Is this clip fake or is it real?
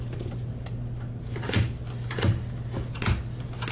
real